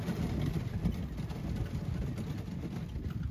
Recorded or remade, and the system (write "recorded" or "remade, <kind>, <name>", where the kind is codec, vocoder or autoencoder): recorded